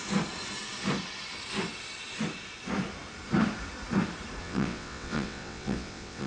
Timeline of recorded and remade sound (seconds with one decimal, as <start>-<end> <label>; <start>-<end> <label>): 0.0-4.4 recorded; 4.4-6.3 remade